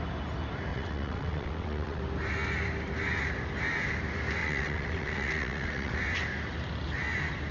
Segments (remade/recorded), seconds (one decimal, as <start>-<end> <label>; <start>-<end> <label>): 0.0-0.7 recorded; 0.7-2.0 remade; 2.0-4.4 recorded; 4.4-6.0 remade; 6.0-7.5 recorded